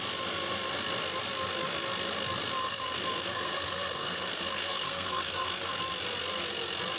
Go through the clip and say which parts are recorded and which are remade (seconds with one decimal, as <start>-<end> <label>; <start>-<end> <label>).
0.0-2.6 recorded; 2.6-5.8 remade; 5.8-7.0 recorded